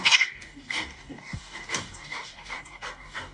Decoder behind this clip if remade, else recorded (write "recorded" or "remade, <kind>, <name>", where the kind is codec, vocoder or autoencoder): remade, codec, DAC